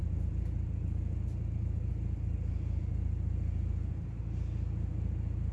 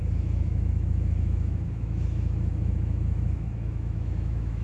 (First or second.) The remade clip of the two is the second